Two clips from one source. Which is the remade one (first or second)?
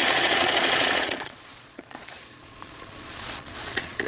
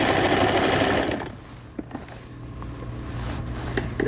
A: first